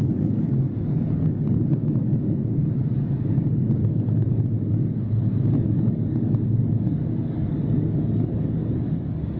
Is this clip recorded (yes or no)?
no